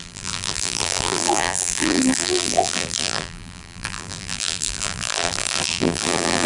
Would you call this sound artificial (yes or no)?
yes